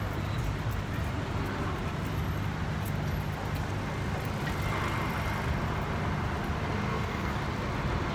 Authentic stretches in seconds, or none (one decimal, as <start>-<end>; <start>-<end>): 0.0-6.9; 7.4-8.1